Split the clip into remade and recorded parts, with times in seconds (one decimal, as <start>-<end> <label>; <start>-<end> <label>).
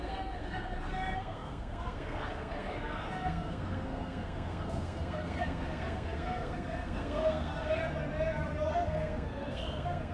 0.0-7.8 remade; 7.8-8.7 recorded; 8.7-10.1 remade